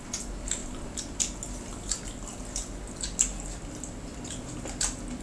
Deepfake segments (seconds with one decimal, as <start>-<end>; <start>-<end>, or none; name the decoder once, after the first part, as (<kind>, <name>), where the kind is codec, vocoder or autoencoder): none